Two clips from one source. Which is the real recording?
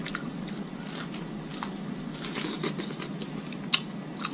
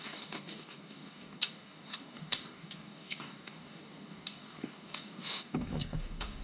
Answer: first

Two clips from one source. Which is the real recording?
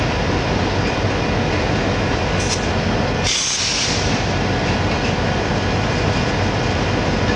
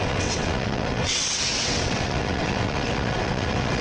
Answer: first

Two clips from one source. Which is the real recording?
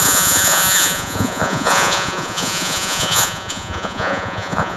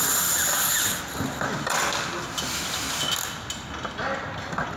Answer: second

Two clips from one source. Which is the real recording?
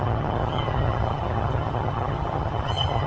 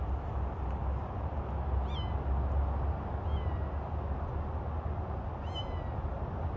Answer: second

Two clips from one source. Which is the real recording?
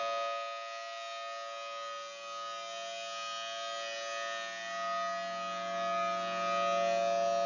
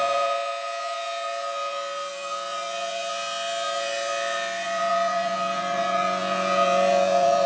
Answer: first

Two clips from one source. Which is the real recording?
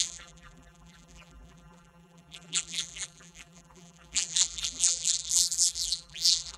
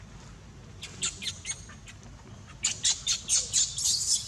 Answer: second